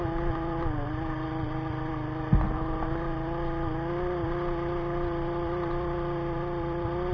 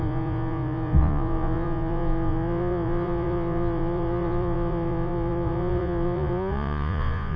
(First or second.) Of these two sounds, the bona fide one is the first